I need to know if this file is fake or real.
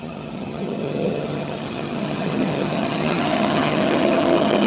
fake